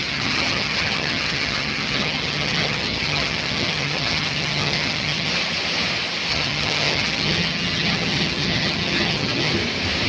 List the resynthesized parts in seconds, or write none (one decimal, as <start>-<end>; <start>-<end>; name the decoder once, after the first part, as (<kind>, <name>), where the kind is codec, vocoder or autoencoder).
0.0-5.3 (vocoder, HiFi-GAN); 6.3-9.5